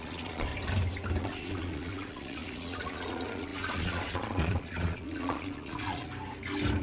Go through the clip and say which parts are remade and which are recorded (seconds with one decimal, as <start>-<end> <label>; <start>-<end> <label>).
0.0-0.5 remade; 0.5-1.2 recorded; 1.2-6.1 remade; 6.1-6.8 recorded